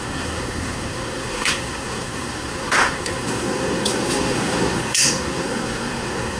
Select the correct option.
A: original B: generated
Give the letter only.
B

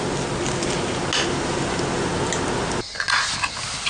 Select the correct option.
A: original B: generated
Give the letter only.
A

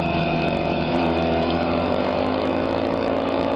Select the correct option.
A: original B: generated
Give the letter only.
B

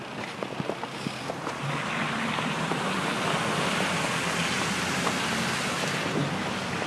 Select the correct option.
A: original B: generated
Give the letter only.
A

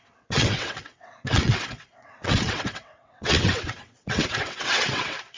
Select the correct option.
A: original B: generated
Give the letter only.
B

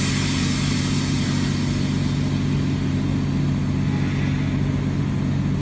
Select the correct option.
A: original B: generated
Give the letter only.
A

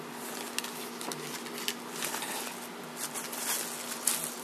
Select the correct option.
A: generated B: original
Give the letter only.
B